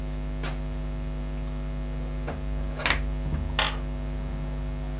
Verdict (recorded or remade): recorded